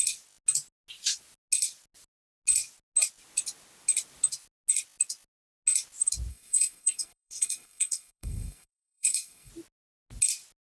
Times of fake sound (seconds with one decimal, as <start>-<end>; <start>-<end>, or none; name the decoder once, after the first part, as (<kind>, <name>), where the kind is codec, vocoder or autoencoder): 6.3-9.5 (codec, SNAC)